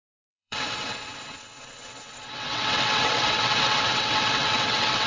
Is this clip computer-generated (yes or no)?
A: yes